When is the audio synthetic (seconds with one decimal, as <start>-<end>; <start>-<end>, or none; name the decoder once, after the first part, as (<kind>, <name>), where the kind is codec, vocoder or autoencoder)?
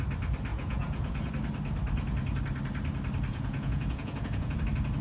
0.5-1.3 (vocoder, Vocos); 3.3-4.6